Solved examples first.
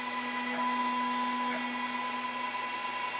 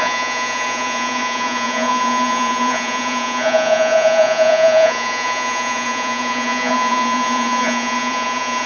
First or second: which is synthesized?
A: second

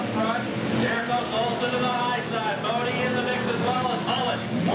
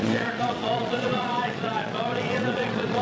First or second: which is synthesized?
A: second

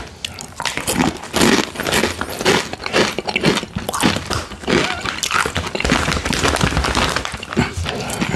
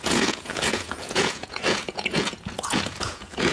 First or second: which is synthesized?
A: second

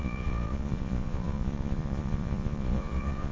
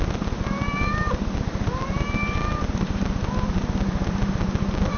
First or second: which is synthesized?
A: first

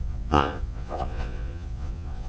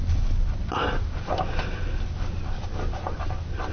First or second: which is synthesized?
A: first